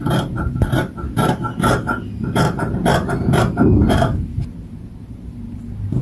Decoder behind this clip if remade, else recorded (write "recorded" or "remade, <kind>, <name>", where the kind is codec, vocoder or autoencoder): remade, vocoder, BigVGAN v2